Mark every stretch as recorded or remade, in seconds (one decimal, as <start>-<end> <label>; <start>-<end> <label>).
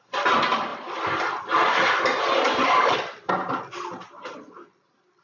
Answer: 0.0-5.2 recorded